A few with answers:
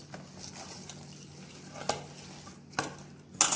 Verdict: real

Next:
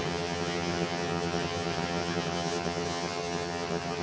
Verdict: fake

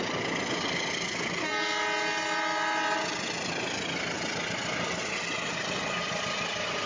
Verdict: real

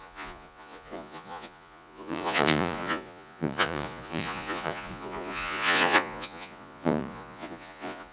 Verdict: fake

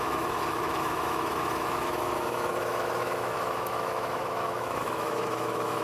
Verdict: fake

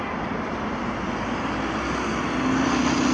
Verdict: real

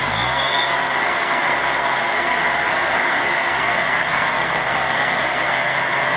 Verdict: fake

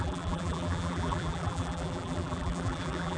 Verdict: fake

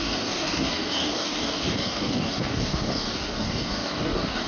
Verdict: fake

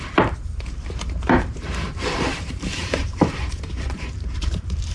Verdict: fake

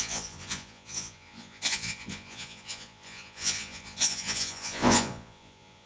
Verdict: fake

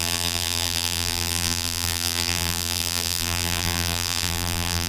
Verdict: fake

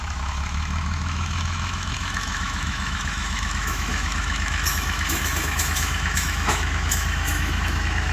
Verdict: fake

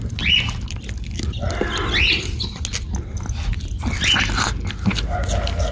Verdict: real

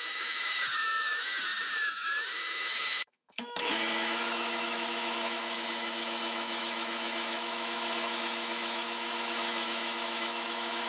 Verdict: fake